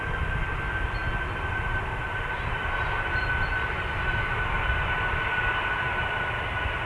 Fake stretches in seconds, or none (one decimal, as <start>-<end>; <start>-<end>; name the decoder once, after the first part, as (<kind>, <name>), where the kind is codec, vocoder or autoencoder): none